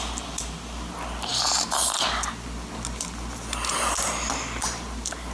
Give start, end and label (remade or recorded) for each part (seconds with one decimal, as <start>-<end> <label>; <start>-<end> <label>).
0.0-5.3 recorded